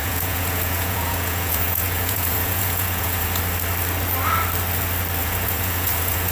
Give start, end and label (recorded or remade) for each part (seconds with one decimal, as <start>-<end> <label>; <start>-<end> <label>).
0.0-3.4 remade; 3.4-5.2 recorded; 5.2-6.3 remade